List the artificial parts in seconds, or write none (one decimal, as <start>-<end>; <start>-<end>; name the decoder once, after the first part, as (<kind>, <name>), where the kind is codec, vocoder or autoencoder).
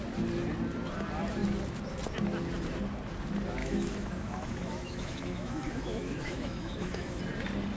3.6-7.2 (autoencoder, DAC-VAE)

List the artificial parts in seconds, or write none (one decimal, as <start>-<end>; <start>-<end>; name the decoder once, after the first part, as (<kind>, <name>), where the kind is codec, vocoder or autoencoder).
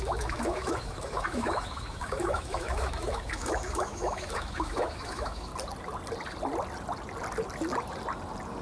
0.0-5.5 (autoencoder, DAC-VAE)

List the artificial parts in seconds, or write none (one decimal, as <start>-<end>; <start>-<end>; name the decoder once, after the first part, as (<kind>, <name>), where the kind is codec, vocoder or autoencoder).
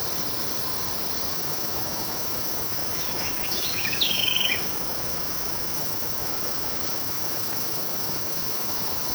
1.3-9.1 (autoencoder, DAC-VAE)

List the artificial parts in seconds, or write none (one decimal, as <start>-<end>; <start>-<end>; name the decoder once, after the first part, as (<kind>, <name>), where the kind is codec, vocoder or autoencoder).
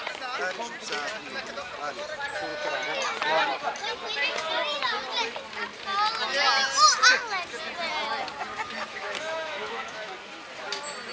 8.9-10.1 (autoencoder, DAC-VAE)